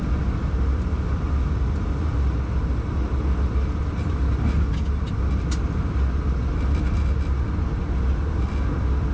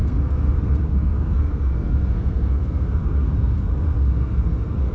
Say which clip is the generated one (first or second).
second